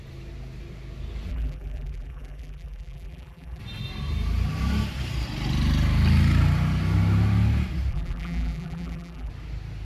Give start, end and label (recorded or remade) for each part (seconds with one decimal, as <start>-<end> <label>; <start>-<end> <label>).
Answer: 0.0-1.3 recorded; 1.3-3.6 remade; 3.6-7.9 recorded; 7.9-9.3 remade; 9.3-9.8 recorded